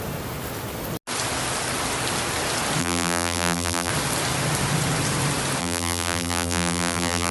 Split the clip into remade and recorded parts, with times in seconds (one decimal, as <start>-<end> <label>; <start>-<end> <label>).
0.0-2.8 recorded; 2.8-3.9 remade; 3.9-5.6 recorded; 5.6-7.3 remade